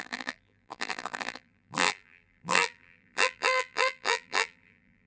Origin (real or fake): fake